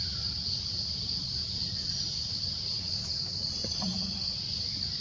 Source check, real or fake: real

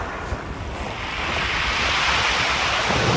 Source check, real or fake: real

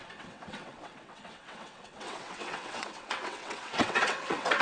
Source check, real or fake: fake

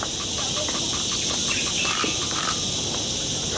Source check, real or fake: real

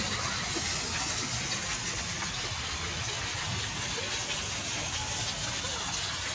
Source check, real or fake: real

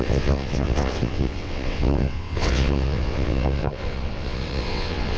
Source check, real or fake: fake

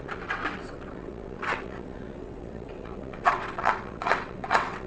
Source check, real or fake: fake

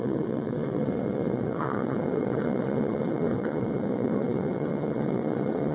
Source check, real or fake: fake